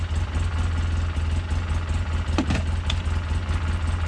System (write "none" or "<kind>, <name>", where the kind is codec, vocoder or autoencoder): none